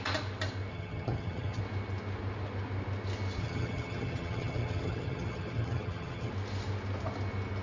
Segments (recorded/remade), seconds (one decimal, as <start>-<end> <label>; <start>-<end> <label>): 0.0-0.7 recorded; 0.7-1.6 remade; 1.6-3.4 recorded; 3.4-6.3 remade; 6.3-7.6 recorded